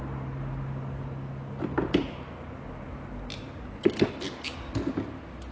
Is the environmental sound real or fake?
real